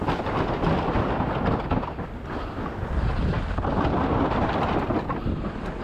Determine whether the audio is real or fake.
fake